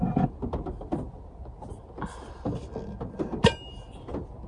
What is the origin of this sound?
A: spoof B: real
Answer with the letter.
B